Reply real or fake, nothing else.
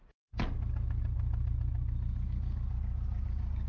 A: real